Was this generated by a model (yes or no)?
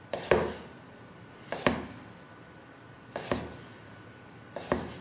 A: no